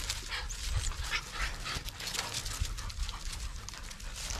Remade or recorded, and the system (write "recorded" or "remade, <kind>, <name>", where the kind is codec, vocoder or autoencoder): recorded